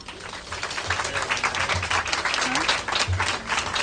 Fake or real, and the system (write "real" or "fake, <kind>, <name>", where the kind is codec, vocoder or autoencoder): real